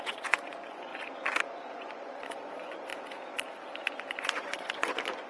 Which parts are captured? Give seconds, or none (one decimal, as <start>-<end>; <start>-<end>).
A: 0.9-1.4; 2.9-4.2